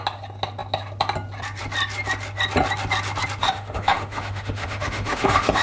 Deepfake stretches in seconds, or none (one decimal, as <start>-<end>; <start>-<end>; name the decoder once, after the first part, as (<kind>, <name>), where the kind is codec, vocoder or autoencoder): 3.4-5.6 (autoencoder, DAC-VAE)